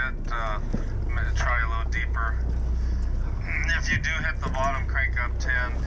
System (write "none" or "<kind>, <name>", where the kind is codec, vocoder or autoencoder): none